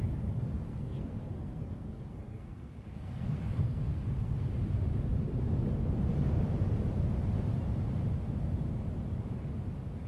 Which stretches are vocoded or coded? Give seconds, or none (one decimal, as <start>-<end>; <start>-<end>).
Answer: 0.7-4.5